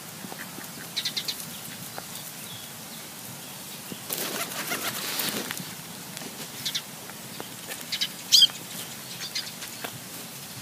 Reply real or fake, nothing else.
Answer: real